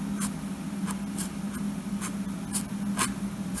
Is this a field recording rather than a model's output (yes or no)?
yes